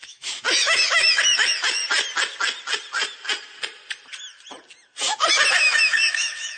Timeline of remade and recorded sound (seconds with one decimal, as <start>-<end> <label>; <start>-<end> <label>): 0.0-1.8 remade; 1.8-5.5 recorded; 5.5-6.6 remade